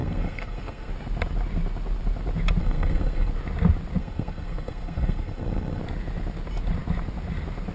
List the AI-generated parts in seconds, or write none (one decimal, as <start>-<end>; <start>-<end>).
0.0-0.9; 2.6-3.3; 4.0-5.8